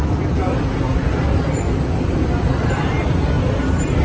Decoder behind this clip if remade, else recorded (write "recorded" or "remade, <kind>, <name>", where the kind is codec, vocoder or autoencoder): recorded